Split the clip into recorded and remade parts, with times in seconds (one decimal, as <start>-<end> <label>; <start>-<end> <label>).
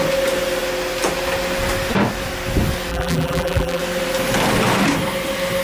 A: 0.0-2.9 recorded; 2.9-3.8 remade; 3.8-5.6 recorded